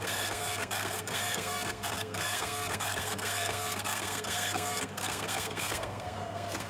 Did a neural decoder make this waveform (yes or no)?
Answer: yes